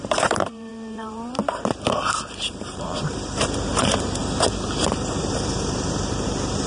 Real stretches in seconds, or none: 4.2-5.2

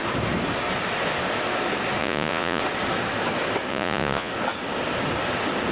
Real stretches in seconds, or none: 0.0-2.0; 2.6-3.7; 4.3-5.7

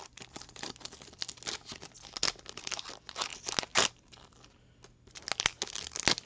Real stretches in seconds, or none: 0.0-6.3

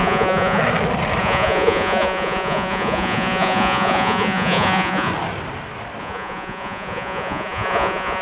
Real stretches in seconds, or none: 0.6-1.2; 5.1-6.0

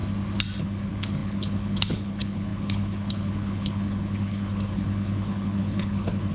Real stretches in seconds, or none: 0.0-0.6